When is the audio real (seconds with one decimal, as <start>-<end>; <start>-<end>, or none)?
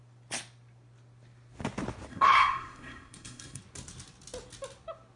0.0-2.1; 3.6-5.2